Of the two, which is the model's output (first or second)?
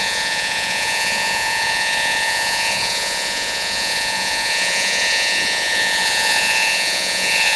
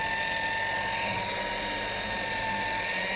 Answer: first